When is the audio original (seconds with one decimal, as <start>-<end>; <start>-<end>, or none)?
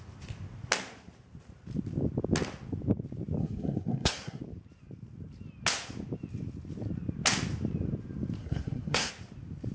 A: 0.0-3.4; 4.4-8.4; 9.1-9.7